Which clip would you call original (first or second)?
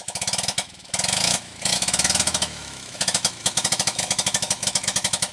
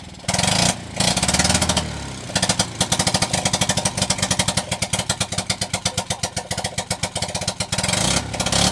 second